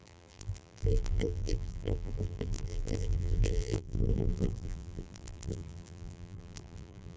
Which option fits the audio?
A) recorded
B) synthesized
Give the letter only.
B